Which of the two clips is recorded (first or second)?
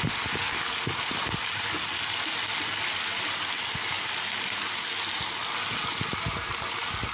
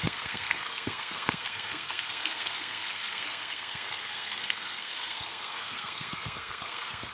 first